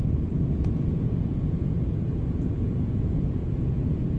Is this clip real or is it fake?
fake